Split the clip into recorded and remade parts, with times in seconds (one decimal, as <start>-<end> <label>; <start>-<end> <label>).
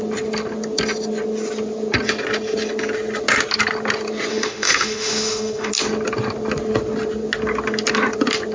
0.0-4.3 recorded; 4.3-5.7 remade; 5.7-8.5 recorded